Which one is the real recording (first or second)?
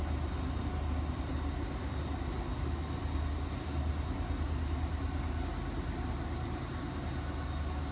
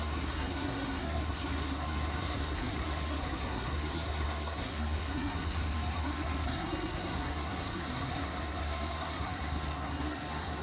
first